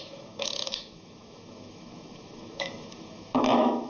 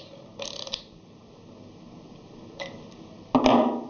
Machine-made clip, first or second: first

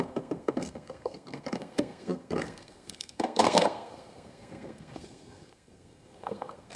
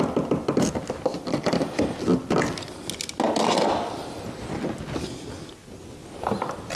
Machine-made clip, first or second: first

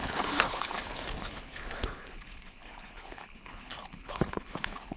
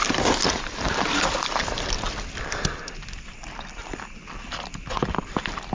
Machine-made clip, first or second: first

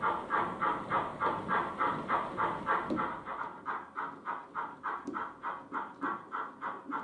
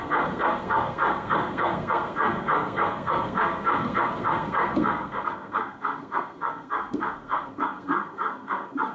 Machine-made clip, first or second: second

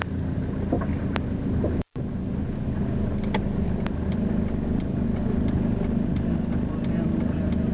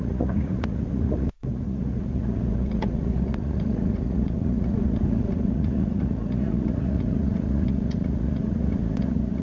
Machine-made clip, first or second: second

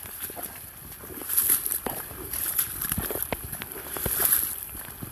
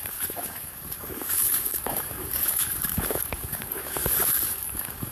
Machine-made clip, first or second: second